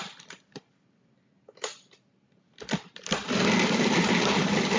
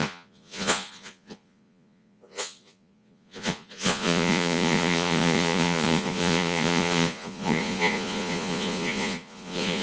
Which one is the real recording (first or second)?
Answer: first